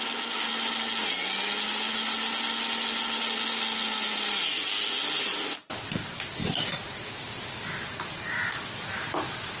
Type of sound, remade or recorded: recorded